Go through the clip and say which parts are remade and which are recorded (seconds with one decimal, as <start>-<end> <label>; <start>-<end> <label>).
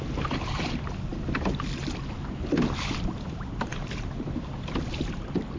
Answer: 0.0-5.6 recorded